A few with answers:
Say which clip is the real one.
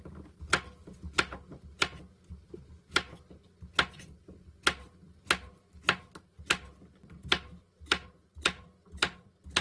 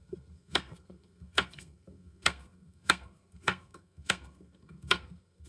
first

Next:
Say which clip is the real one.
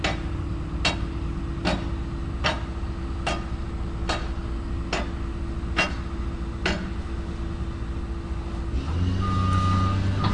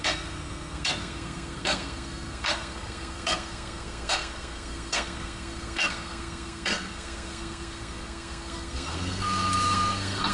first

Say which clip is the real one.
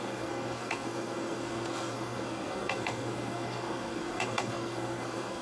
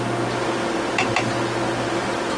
second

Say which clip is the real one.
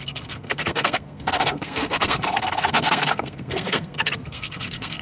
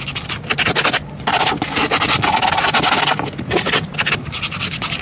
second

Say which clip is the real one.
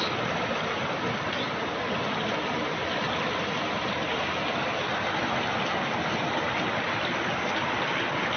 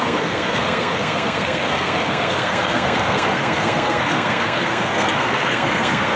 first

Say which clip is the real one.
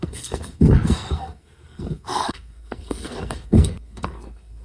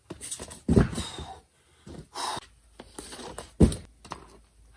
second